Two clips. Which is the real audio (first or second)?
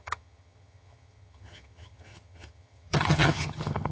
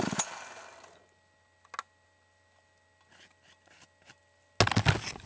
second